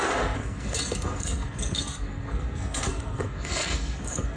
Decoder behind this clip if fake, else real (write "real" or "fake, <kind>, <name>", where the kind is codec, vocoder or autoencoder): fake, codec, SNAC